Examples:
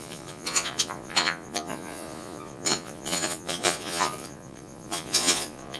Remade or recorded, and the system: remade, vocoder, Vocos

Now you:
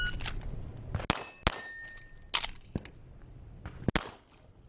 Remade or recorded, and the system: recorded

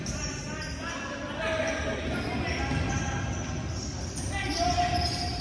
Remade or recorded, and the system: recorded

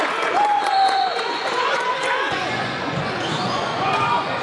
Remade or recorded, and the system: remade, vocoder, Vocos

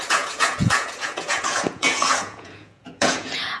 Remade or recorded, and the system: remade, vocoder, Vocos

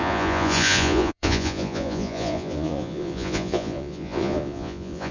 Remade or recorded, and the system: remade, vocoder, Vocos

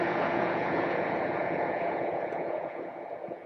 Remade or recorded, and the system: remade, vocoder, Vocos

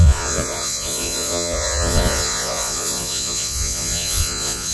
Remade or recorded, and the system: remade, vocoder, Vocos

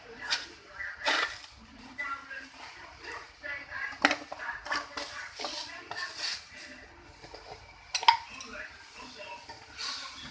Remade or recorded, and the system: recorded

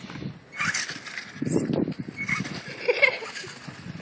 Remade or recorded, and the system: recorded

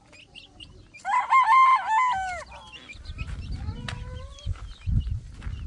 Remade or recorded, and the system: recorded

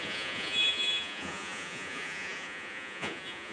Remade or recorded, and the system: remade, vocoder, Vocos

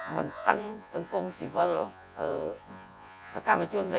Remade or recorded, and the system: remade, vocoder, Vocos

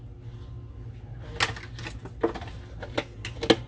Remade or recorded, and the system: recorded